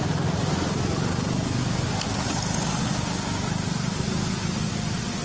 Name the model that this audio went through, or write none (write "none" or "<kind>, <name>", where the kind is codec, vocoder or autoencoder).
none